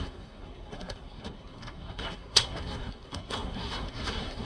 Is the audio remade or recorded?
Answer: remade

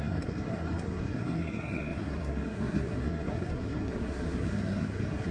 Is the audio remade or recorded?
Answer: remade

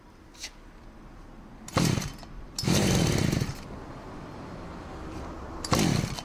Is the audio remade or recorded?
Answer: recorded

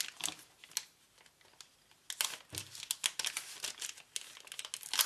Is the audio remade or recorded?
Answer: recorded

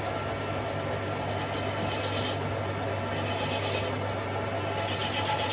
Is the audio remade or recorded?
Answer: recorded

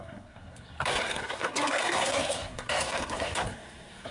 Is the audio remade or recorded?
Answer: remade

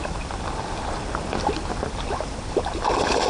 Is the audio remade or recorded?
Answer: recorded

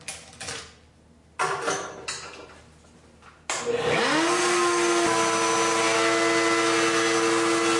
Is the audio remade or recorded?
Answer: recorded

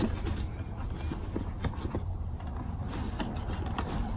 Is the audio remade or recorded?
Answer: recorded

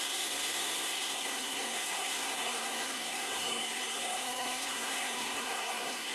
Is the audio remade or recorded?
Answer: remade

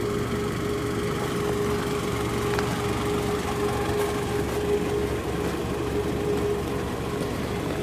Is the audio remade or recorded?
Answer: recorded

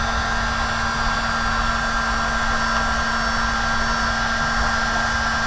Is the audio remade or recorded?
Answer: recorded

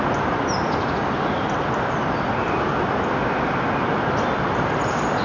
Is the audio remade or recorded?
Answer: recorded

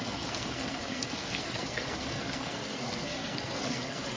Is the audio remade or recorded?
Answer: remade